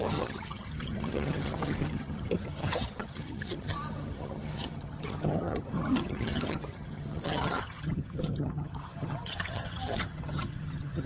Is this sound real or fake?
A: fake